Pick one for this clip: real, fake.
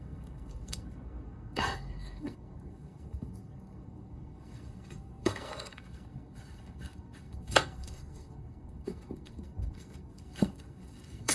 fake